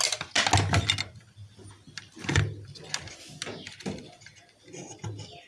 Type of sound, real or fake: real